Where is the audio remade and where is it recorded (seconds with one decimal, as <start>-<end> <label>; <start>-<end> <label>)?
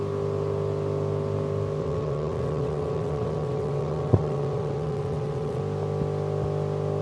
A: 0.0-1.8 recorded; 1.8-5.6 remade; 5.6-7.0 recorded